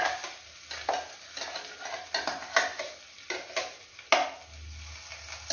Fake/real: real